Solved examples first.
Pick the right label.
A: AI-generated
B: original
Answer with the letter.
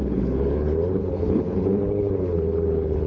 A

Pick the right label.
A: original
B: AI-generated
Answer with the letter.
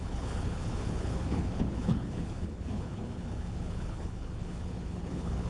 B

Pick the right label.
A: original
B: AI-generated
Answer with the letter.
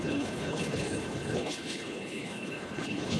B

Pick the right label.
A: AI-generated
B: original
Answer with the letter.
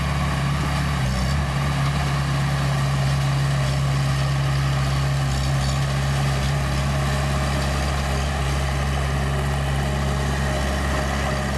B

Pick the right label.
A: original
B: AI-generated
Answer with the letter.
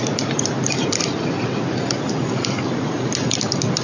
A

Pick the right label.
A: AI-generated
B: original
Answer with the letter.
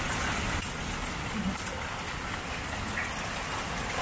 B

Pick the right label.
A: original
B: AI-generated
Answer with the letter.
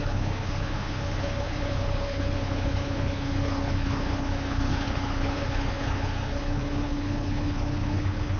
B